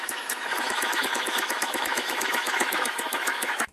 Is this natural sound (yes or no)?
no